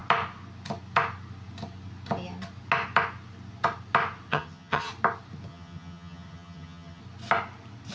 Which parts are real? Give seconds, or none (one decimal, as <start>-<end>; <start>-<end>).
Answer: 0.0-4.3; 4.9-5.5; 7.0-7.9